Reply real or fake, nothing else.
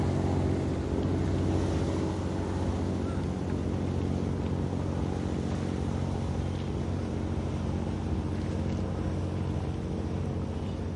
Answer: real